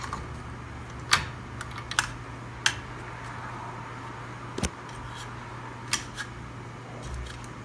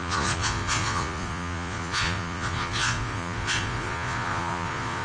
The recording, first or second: first